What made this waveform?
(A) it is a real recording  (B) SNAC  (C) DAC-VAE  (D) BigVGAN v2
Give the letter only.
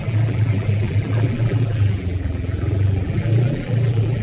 D